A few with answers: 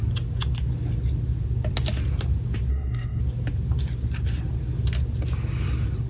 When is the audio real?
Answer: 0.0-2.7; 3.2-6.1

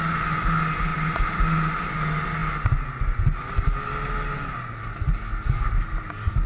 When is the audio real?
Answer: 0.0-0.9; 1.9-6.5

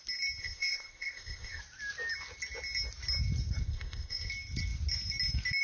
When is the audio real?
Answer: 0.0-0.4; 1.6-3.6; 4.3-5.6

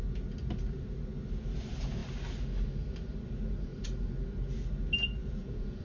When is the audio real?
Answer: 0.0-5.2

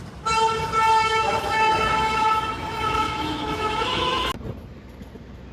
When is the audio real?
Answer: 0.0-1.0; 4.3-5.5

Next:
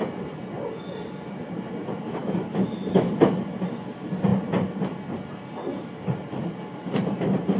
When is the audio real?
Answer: 0.0-2.2; 3.1-7.6

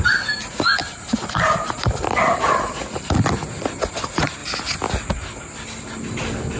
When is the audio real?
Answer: 0.0-0.8; 3.1-6.6

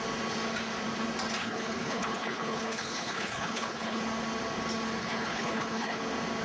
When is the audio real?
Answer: 0.0-1.4; 4.0-5.0; 6.0-6.4